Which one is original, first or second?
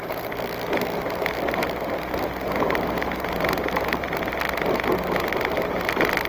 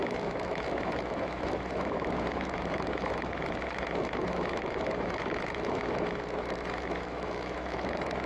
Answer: first